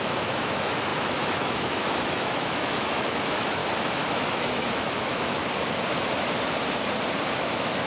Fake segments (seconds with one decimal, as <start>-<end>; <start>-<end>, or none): 0.0-3.6; 4.1-5.4; 7.4-7.9